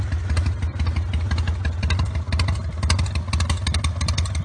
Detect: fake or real real